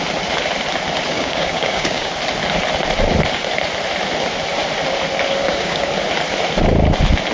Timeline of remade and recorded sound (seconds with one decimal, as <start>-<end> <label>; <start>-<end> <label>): 0.0-1.1 recorded; 1.1-2.1 remade; 2.1-5.4 recorded; 5.4-5.9 remade; 5.9-7.3 recorded